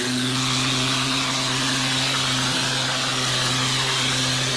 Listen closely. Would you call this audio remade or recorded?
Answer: recorded